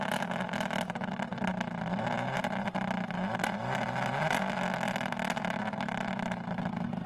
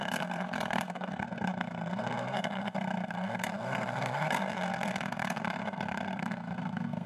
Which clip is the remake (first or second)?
second